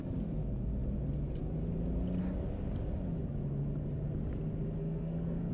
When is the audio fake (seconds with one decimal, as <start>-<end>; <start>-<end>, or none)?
4.8-5.5